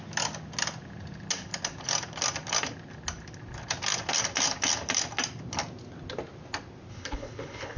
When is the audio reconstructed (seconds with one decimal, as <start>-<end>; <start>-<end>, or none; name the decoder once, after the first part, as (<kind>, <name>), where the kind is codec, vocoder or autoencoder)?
6.9-7.8 (codec, HILCodec)

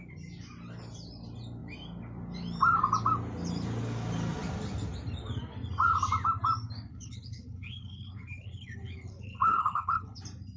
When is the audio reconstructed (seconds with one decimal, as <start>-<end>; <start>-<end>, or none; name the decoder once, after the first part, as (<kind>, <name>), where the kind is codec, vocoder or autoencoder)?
6.9-10.2 (codec, HILCodec)